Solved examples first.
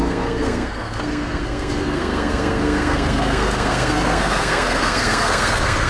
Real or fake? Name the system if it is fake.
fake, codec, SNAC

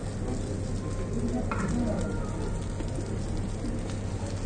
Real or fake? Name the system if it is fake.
real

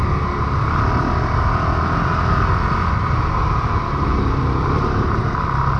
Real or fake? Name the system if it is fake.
real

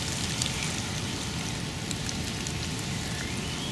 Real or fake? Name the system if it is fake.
real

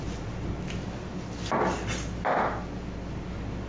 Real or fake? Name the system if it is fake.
real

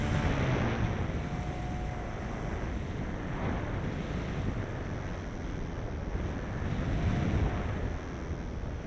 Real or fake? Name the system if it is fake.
real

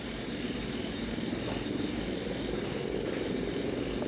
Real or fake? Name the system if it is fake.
real